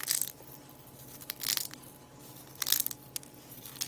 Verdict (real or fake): real